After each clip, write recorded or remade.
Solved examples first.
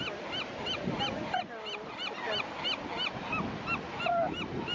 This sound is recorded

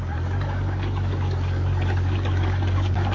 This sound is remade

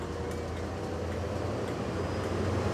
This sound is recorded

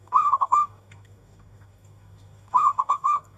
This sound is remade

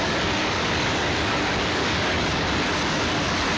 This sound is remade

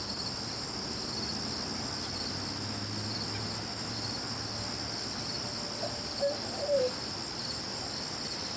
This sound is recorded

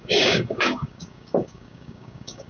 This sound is remade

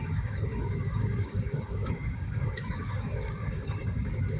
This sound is remade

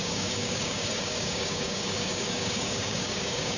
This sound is remade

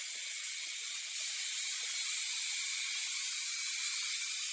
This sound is recorded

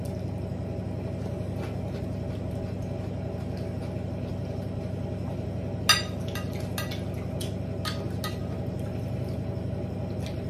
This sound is recorded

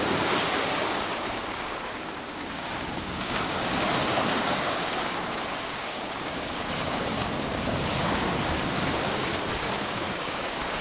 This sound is remade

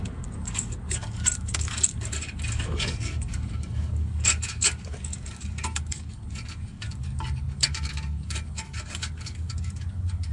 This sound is remade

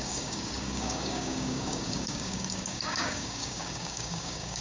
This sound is remade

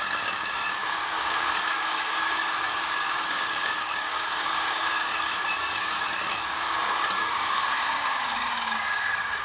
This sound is remade